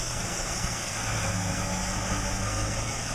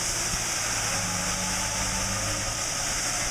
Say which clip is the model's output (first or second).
first